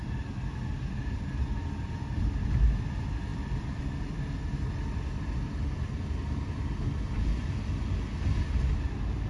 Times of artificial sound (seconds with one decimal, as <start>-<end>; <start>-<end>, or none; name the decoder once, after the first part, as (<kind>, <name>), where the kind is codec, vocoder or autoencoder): 3.3-3.8 (vocoder, BigVGAN v2)